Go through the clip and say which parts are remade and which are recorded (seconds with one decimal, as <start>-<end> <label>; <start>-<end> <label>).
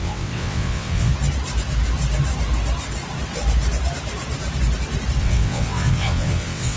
0.0-1.1 remade; 1.1-5.2 recorded; 5.2-6.8 remade